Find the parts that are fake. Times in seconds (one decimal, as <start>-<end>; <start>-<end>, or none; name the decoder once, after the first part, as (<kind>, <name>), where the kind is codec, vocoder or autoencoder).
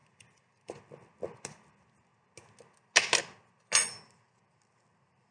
0.0-0.8 (vocoder, BigVGAN v2)